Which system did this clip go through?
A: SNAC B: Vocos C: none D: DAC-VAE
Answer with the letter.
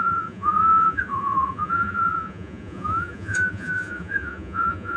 B